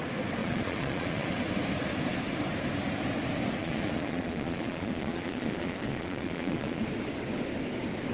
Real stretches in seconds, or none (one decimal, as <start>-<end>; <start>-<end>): 0.0-0.4; 1.3-3.6; 6.8-8.1

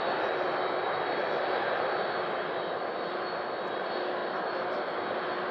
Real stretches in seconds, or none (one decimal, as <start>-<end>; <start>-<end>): 0.0-5.5

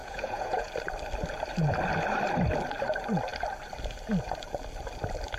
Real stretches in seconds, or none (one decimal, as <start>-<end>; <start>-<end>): 0.7-5.4